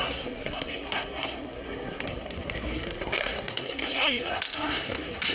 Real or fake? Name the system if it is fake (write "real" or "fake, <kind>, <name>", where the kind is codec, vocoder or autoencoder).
fake, codec, SNAC